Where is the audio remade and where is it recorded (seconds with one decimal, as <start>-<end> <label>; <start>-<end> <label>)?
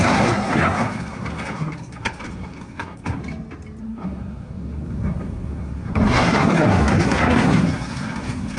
0.0-3.2 remade; 3.2-3.8 recorded; 3.8-8.6 remade